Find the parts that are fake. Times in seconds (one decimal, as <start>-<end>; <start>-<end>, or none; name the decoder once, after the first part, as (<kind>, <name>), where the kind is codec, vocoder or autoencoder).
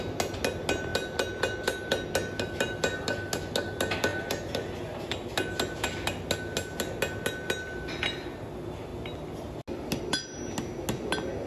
none